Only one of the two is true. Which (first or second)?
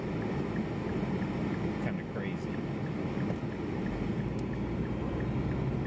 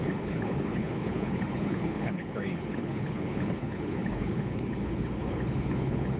first